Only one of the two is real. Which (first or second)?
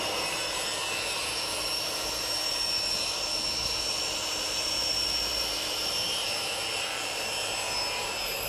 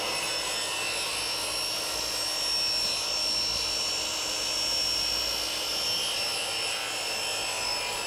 second